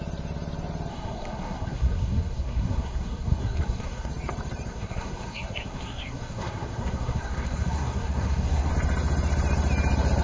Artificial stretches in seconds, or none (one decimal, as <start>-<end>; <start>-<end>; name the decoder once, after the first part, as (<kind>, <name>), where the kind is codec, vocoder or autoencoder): 0.9-4.1 (codec, SNAC); 4.7-8.7

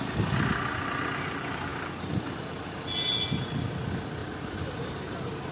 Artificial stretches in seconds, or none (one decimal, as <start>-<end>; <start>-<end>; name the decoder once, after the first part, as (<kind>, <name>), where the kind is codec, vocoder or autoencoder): none

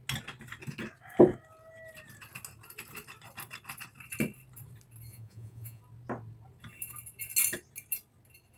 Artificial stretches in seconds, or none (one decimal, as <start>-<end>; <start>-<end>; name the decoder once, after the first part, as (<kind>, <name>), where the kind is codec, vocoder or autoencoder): 5.1-5.8 (vocoder, Vocos)